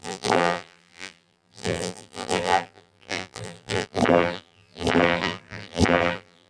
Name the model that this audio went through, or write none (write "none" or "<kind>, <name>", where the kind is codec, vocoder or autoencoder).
vocoder, BigVGAN v2